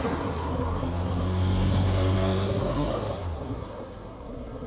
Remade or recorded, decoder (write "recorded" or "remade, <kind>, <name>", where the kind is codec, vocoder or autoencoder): remade, codec, SNAC